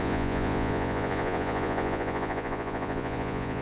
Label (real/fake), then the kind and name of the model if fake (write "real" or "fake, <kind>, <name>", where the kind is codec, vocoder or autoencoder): fake, vocoder, Vocos